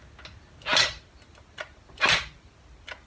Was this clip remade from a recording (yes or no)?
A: no